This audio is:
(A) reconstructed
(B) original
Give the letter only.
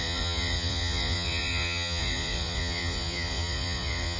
A